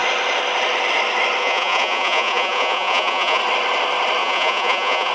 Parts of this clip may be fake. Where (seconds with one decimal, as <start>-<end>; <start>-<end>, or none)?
1.4-3.4; 4.2-5.1